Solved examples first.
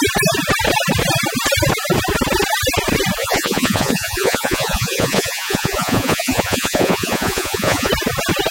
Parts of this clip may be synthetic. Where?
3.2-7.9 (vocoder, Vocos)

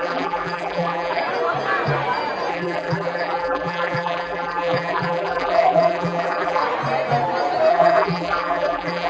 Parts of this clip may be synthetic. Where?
0.0-1.2 (vocoder, BigVGAN v2); 2.5-6.6; 7.7-9.1